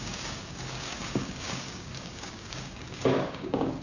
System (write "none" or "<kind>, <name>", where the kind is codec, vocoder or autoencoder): codec, DAC